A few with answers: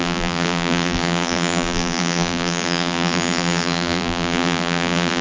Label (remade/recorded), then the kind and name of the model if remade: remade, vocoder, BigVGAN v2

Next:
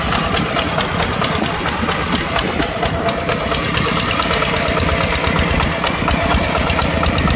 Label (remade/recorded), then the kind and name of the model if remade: remade, vocoder, BigVGAN v2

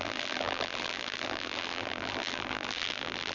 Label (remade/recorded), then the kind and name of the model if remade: remade, vocoder, BigVGAN v2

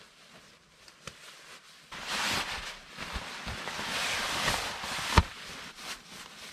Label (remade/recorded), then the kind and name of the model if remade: remade, vocoder, BigVGAN v2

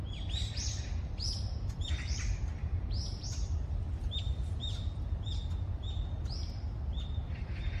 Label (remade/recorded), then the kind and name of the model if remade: remade, vocoder, BigVGAN v2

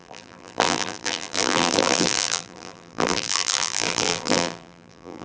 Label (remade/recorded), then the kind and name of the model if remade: remade, vocoder, BigVGAN v2